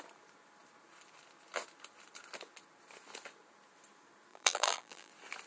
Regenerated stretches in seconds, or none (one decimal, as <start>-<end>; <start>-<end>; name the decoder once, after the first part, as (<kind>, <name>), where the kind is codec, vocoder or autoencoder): 4.3-5.1 (vocoder, BigVGAN v2)